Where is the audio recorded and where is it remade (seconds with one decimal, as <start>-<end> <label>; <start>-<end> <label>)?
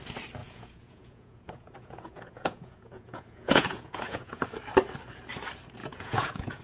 0.0-0.4 recorded; 0.4-4.4 remade; 4.4-5.8 recorded; 5.8-6.6 remade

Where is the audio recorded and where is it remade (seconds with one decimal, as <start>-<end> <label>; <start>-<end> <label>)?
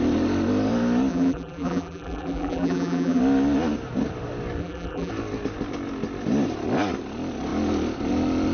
0.0-1.1 recorded; 1.1-3.2 remade; 3.2-4.6 recorded; 4.6-5.1 remade; 5.1-8.5 recorded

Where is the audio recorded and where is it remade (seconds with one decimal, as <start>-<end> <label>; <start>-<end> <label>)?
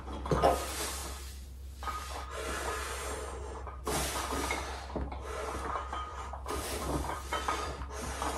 0.0-6.1 recorded; 6.1-7.7 remade; 7.7-8.4 recorded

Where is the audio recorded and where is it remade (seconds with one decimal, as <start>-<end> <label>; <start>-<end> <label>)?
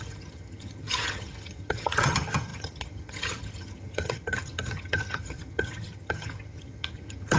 0.0-7.4 remade